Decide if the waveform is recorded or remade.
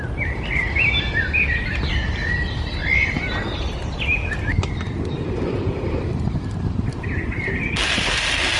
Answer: recorded